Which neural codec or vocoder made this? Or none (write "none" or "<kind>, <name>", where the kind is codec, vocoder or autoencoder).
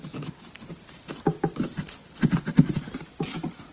none